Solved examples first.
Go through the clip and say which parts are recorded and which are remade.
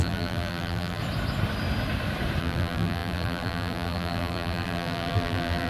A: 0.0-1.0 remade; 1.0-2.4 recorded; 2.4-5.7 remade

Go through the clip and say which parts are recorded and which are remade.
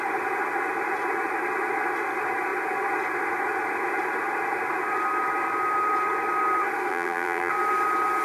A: 0.0-6.9 recorded; 6.9-7.5 remade; 7.5-8.2 recorded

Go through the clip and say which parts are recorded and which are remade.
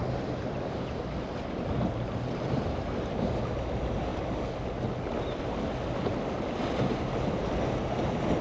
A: 0.0-0.5 recorded; 0.5-4.1 remade; 4.1-6.8 recorded; 6.8-8.4 remade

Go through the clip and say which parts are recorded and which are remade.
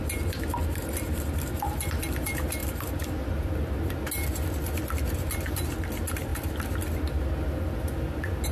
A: 0.0-0.6 recorded; 0.6-1.2 remade; 1.2-8.5 recorded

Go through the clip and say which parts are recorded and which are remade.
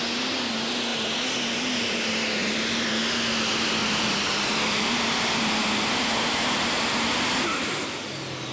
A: 0.0-2.4 recorded; 2.4-2.9 remade; 2.9-3.8 recorded; 3.8-8.1 remade; 8.1-8.5 recorded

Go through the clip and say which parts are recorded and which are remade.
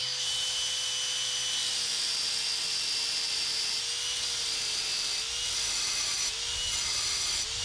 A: 0.0-7.6 recorded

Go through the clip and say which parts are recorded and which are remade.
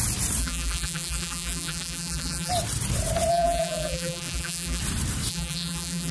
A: 0.0-0.4 recorded; 0.4-2.5 remade; 2.5-3.3 recorded; 3.3-4.8 remade; 4.8-5.3 recorded; 5.3-6.1 remade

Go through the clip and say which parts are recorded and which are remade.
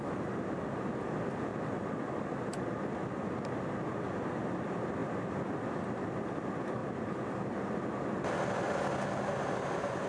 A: 0.0-1.5 recorded; 1.5-2.3 remade; 2.3-5.0 recorded; 5.0-5.8 remade; 5.8-10.1 recorded